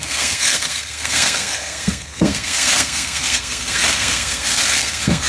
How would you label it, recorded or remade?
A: remade